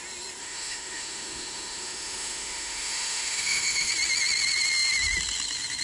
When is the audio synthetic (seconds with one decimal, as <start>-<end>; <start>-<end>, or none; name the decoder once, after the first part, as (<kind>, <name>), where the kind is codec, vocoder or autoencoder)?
0.4-3.9 (autoencoder, DAC-VAE)